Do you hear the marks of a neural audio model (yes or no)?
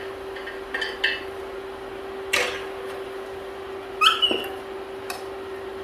no